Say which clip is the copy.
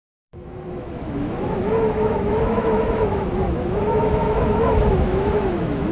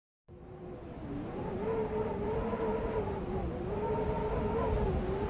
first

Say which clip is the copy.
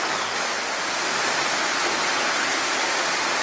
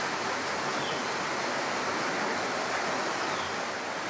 first